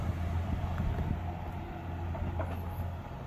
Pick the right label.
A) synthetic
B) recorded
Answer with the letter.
A